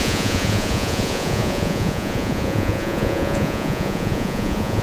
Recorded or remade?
remade